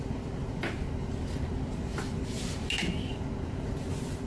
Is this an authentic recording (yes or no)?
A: yes